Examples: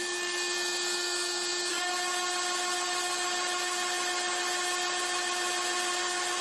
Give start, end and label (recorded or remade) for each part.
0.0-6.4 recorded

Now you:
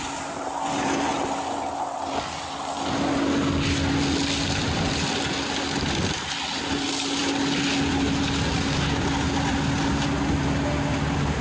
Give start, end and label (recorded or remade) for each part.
0.0-11.4 recorded

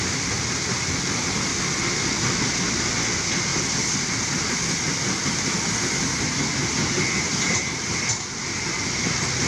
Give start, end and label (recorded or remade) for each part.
0.0-9.5 recorded

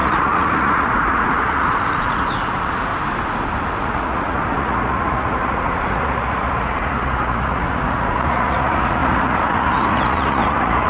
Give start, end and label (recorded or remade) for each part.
0.0-2.9 remade; 2.9-3.8 recorded; 3.8-10.9 remade

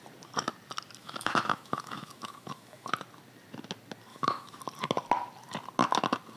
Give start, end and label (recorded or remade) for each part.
0.0-1.0 recorded; 1.0-2.9 remade; 2.9-4.1 recorded; 4.1-4.6 remade; 4.6-6.4 recorded

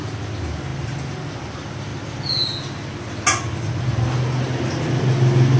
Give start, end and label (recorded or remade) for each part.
0.0-5.6 recorded